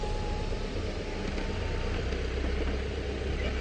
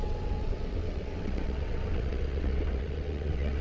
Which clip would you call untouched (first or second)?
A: first